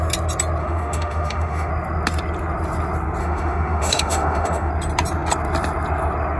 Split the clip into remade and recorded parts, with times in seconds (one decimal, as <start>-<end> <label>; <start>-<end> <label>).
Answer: 0.0-0.6 recorded; 0.6-1.7 remade; 1.7-3.2 recorded; 3.2-4.7 remade; 4.7-6.4 recorded